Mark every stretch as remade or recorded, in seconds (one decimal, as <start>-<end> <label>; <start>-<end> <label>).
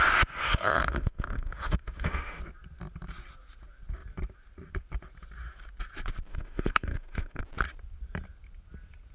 0.0-0.4 recorded; 0.4-2.4 remade; 2.4-6.3 recorded; 6.3-7.4 remade; 7.4-9.1 recorded